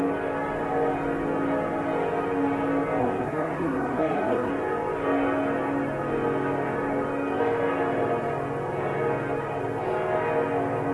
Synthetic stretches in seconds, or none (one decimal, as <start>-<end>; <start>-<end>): 3.0-4.5